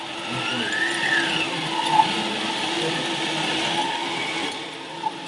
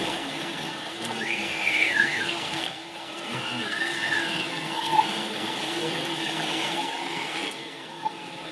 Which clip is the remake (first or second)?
second